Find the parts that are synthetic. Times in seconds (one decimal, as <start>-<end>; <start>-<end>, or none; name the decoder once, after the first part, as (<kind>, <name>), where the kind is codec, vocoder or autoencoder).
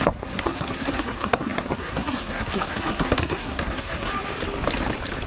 0.0-4.1 (codec, SNAC)